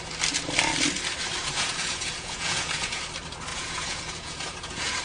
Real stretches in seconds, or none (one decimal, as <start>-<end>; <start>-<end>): 0.0-1.4; 3.0-3.5